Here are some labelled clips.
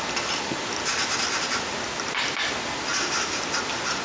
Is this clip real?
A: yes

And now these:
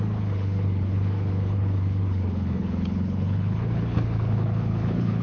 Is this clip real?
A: no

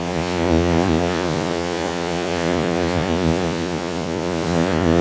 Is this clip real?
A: no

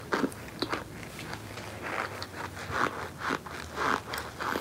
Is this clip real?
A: yes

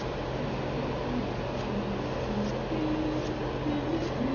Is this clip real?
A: yes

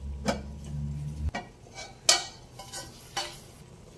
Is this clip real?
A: yes